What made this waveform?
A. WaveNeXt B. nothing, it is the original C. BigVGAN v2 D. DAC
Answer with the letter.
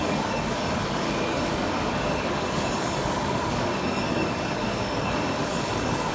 D